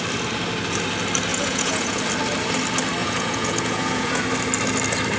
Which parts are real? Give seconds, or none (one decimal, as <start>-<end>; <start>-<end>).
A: 0.0-1.3; 2.0-3.0; 4.2-5.2